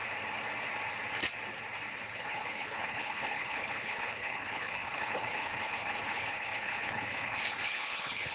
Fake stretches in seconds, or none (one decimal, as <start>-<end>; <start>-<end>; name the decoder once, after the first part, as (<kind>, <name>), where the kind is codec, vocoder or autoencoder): 1.9-8.3 (codec, HILCodec)